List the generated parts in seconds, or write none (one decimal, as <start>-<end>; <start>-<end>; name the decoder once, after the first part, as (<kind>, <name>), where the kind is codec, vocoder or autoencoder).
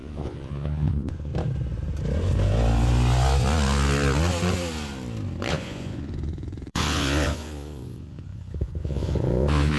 0.0-1.3 (vocoder, Vocos); 5.5-9.8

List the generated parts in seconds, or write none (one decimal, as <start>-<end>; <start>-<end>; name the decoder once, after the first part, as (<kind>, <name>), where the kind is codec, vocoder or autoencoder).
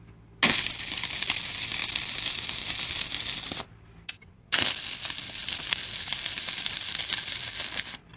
none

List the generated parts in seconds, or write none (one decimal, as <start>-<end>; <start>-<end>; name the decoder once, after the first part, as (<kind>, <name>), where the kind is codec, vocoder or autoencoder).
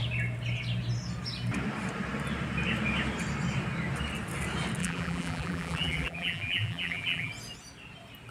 4.8-7.3 (vocoder, BigVGAN v2)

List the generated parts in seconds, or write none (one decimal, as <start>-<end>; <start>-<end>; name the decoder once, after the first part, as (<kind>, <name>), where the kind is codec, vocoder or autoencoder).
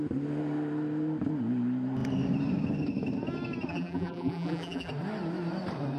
3.7-4.9 (vocoder, BigVGAN v2)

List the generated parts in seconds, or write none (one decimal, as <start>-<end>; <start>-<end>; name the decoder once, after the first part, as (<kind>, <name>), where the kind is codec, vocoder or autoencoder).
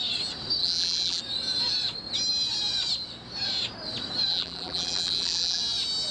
0.6-1.2 (vocoder, BigVGAN v2); 4.3-5.6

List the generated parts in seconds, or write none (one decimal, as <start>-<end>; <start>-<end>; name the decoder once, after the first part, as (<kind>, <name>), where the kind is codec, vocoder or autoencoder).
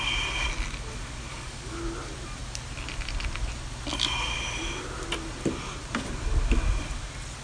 1.3-1.8 (codec, DAC)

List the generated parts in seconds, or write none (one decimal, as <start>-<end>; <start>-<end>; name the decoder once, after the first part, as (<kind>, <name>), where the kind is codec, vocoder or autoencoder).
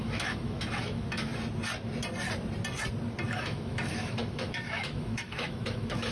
0.0-1.3 (autoencoder, DAC-VAE); 3.3-6.1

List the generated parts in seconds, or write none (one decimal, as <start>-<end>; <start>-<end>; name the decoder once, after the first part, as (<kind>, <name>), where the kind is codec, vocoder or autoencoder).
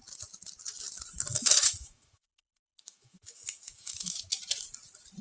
1.3-4.4 (autoencoder, DAC-VAE)